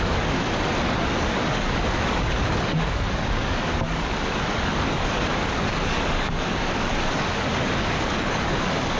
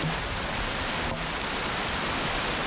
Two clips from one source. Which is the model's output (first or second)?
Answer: first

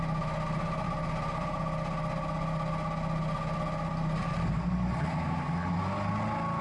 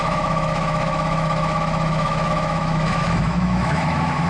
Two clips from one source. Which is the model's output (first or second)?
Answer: second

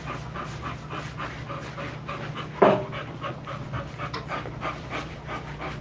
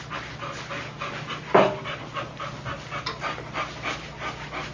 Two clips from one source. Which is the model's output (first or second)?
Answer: first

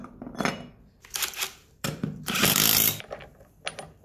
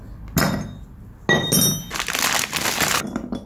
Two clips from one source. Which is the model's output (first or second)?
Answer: first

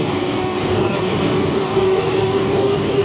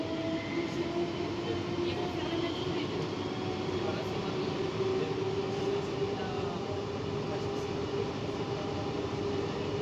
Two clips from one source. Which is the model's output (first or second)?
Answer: first